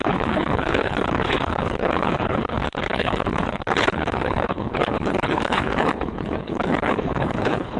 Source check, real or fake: fake